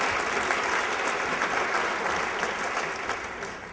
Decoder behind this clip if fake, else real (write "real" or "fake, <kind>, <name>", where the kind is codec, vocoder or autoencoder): real